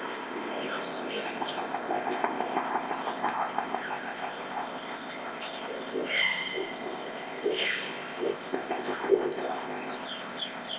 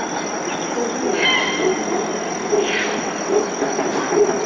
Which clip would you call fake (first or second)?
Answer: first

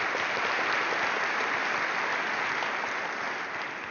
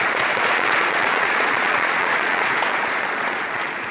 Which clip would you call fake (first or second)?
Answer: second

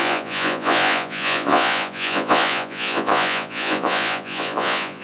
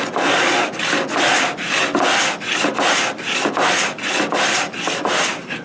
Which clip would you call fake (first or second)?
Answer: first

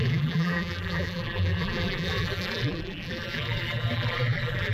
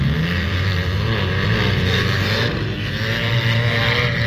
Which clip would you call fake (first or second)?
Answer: first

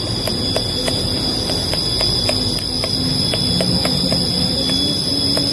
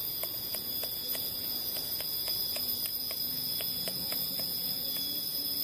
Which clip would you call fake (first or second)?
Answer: second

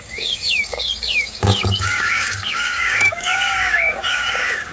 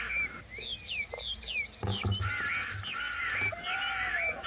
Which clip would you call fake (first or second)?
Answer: first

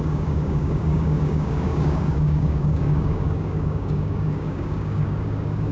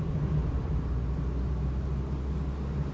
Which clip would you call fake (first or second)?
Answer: first